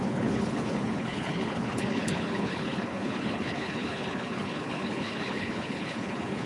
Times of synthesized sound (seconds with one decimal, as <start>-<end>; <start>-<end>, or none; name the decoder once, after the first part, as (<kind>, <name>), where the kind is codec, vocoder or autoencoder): 0.0-6.5 (codec, HILCodec)